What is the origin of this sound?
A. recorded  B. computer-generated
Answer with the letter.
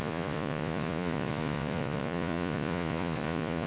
B